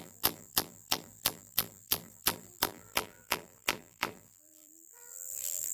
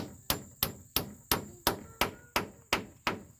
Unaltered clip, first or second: second